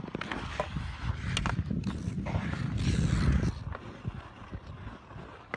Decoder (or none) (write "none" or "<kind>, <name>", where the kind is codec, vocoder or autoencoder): none